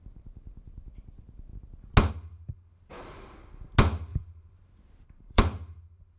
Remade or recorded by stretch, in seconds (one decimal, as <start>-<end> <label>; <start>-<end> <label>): 0.0-4.1 recorded; 4.1-5.8 remade; 5.8-6.2 recorded